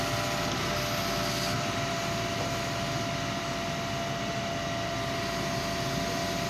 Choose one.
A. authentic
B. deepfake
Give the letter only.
A